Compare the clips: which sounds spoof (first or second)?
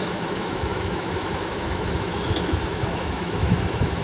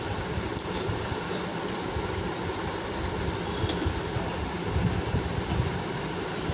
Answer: first